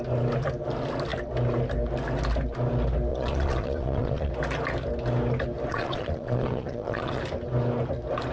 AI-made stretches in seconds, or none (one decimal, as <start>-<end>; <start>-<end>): 3.1-4.3; 5.7-7.2